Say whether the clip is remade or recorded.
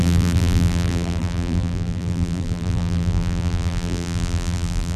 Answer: remade